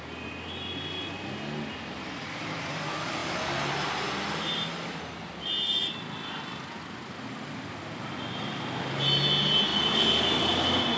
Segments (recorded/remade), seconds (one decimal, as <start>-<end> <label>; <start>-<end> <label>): 0.0-11.0 recorded